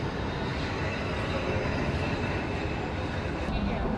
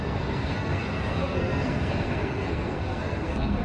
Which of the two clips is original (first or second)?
first